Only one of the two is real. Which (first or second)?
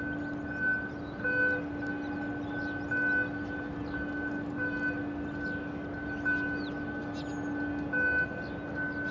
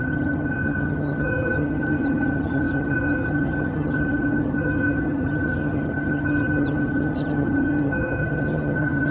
first